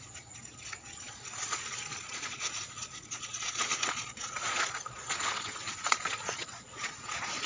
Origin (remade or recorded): remade